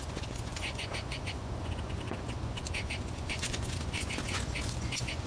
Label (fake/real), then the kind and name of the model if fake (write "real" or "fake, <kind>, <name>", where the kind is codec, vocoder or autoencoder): fake, vocoder, Vocos